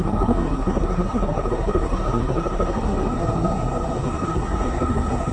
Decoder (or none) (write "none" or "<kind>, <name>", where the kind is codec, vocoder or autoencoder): codec, SNAC